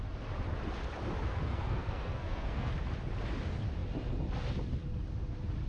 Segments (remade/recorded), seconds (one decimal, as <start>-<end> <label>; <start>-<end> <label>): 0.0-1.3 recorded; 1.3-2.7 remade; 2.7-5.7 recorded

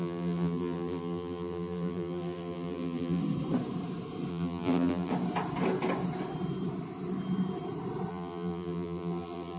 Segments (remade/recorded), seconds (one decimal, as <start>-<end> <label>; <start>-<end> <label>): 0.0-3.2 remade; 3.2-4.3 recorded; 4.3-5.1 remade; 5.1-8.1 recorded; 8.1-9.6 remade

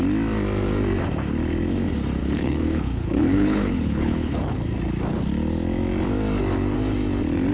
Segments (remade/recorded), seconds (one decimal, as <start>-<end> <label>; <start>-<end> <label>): 0.0-2.2 recorded; 2.2-4.6 remade; 4.6-7.5 recorded

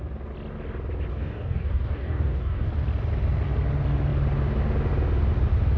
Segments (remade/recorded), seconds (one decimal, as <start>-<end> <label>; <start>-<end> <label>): 0.0-1.1 recorded; 1.1-2.7 remade; 2.7-5.8 recorded

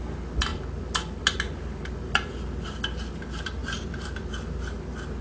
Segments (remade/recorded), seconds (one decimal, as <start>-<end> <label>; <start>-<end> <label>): 0.0-3.6 recorded; 3.6-4.6 remade; 4.6-5.2 recorded

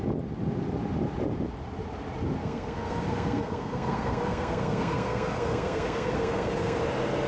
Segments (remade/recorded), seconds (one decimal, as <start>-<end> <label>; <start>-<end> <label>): 0.0-2.4 recorded; 2.4-6.8 remade; 6.8-7.3 recorded